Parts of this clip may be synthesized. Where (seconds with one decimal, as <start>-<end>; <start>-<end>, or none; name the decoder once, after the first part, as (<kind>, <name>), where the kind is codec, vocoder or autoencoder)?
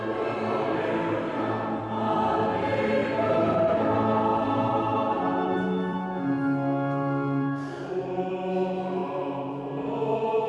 3.0-3.7 (vocoder, BigVGAN v2); 4.3-8.3; 9.0-9.7